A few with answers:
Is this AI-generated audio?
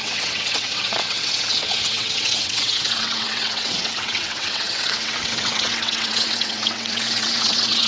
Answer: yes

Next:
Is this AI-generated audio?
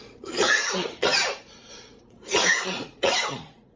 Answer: yes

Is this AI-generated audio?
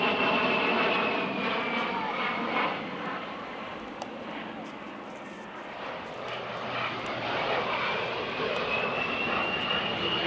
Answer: no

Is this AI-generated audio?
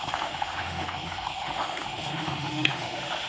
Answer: yes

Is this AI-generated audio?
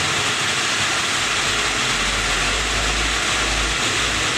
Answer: no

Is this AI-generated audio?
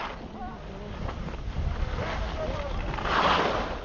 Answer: no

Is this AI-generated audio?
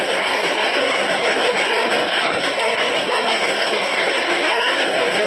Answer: yes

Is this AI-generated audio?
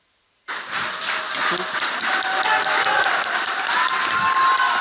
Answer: no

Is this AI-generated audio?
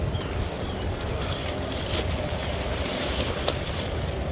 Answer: yes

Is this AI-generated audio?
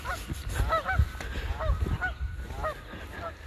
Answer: no